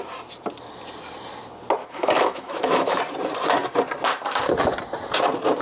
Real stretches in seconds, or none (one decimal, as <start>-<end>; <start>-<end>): 0.0-1.8; 3.0-5.6